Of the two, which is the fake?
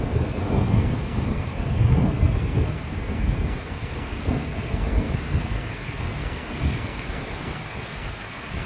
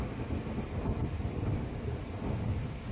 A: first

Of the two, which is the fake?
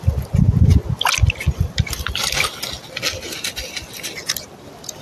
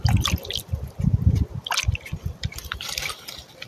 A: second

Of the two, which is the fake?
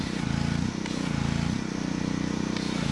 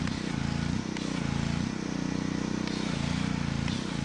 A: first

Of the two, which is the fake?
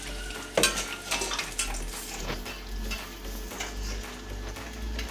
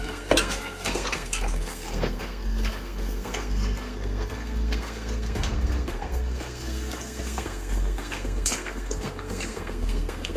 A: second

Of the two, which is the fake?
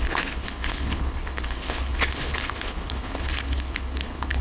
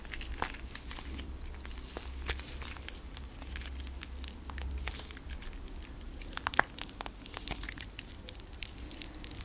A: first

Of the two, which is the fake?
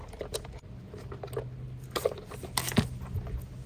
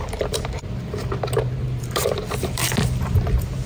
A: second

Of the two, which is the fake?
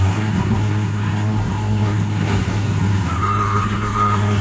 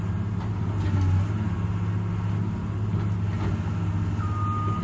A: first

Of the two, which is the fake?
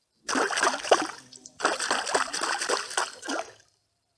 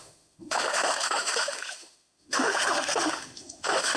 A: second